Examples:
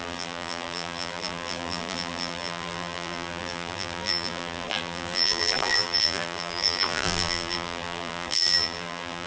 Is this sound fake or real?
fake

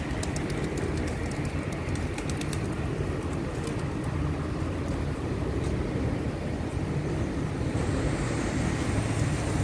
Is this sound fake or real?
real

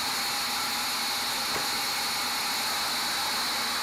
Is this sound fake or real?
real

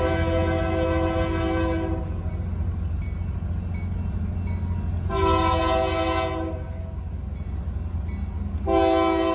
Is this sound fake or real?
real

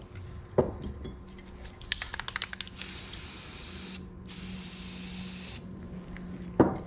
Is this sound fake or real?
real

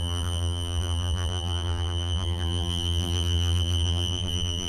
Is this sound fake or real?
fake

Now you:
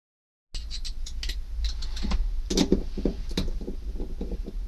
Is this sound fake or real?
real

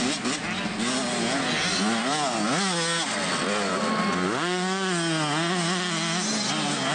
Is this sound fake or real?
real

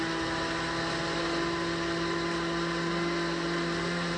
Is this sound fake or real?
real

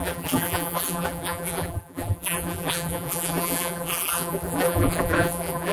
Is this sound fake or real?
fake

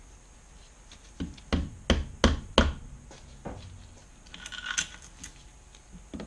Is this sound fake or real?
real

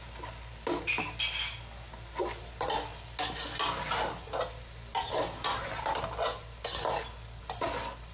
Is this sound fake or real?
real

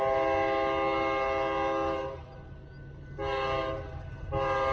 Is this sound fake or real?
real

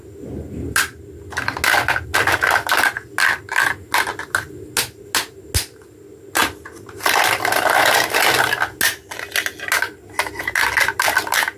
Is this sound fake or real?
real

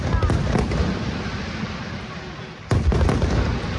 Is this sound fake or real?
real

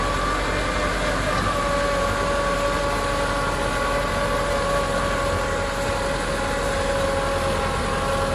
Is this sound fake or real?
real